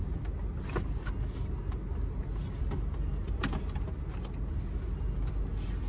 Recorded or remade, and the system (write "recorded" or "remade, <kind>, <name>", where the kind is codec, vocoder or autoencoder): recorded